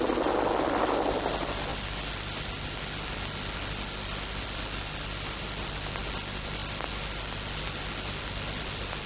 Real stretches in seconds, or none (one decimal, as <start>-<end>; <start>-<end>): 0.0-9.1